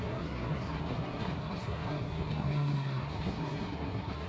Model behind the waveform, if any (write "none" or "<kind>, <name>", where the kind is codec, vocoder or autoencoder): codec, SNAC